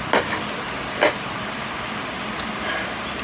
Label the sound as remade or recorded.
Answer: recorded